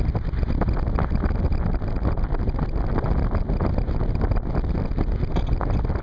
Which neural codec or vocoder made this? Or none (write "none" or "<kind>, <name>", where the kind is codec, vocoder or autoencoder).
none